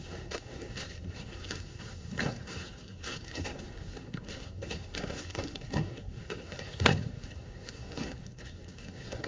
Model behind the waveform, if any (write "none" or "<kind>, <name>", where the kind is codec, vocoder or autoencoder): codec, SNAC